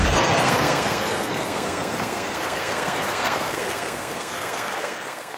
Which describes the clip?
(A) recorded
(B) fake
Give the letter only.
B